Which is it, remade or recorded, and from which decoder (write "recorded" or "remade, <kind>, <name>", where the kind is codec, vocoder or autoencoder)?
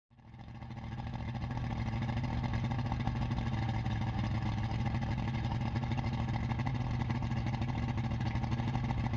recorded